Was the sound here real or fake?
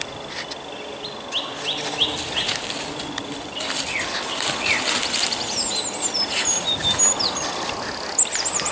real